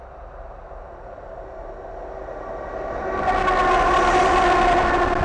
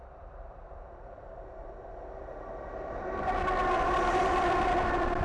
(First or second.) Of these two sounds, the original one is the first